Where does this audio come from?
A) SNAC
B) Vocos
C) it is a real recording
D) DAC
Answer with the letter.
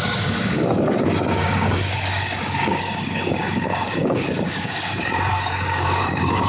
D